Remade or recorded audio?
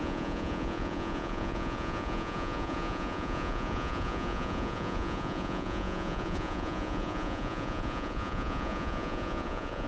remade